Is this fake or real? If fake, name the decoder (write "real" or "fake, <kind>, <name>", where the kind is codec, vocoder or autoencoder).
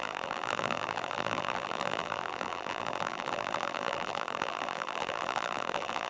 fake, vocoder, BigVGAN v2